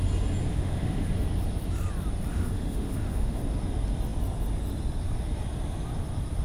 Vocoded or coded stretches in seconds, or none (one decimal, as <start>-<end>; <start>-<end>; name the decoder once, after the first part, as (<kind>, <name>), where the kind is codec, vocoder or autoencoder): 0.5-1.1 (autoencoder, DAC-VAE); 2.3-3.4